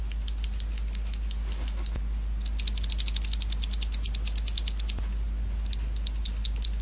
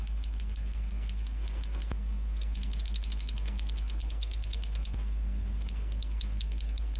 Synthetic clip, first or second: second